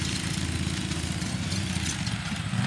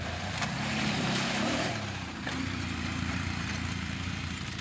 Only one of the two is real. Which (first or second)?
first